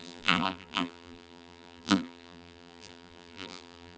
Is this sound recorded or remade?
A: remade